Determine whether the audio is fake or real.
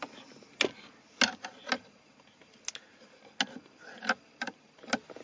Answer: real